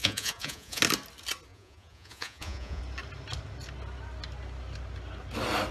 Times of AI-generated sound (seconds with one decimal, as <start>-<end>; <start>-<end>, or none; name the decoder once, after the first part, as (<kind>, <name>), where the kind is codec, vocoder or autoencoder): 0.0-0.8 (vocoder, Vocos); 1.5-2.8